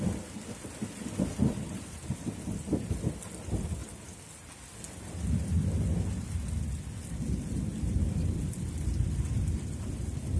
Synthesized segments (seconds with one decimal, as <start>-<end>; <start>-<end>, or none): 1.5-2.0